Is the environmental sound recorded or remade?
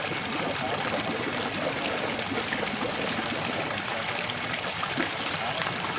recorded